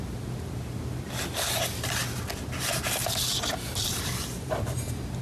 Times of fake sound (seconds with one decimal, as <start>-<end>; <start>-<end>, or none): none